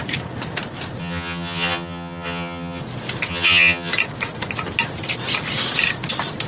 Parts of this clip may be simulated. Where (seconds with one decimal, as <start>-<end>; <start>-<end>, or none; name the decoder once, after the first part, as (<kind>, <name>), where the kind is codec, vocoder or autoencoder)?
1.0-2.8 (vocoder, HiFi-GAN); 3.3-3.9